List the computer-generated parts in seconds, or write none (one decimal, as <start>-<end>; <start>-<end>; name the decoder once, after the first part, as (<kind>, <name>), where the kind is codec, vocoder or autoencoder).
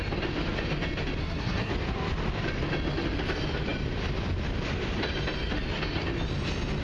1.2-1.7 (codec, SNAC)